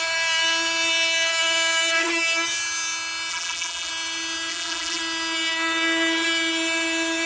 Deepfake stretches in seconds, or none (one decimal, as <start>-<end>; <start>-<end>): 3.3-3.9; 4.5-5.0